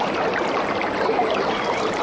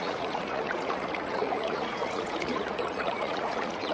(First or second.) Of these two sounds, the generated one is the second